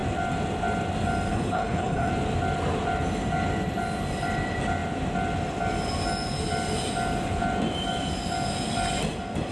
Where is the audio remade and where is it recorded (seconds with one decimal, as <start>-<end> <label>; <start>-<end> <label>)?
0.0-1.3 recorded; 1.3-2.1 remade; 2.1-9.5 recorded